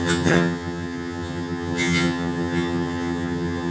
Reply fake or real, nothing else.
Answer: fake